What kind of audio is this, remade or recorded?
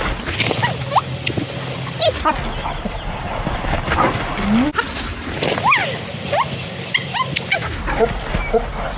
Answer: recorded